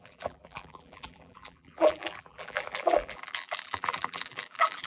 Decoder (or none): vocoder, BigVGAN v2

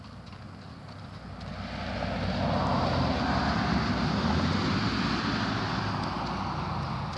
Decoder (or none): none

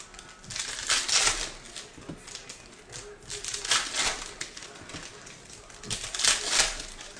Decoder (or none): none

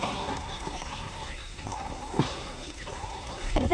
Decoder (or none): codec, SNAC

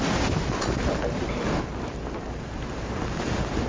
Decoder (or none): none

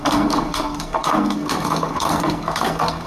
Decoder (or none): codec, SNAC